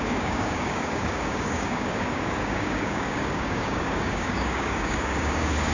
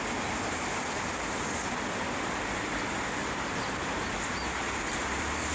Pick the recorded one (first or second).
second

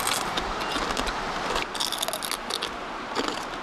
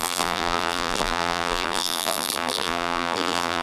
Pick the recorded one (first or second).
first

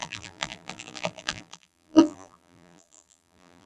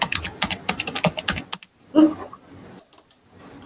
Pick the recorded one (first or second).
second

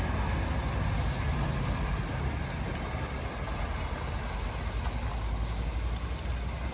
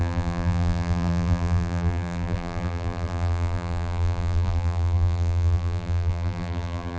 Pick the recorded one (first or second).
first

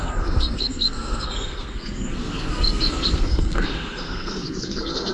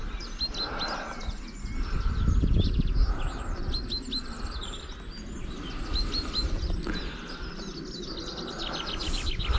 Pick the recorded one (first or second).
second